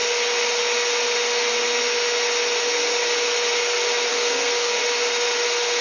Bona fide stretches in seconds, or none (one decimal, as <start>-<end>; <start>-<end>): 0.0-4.1; 4.8-5.8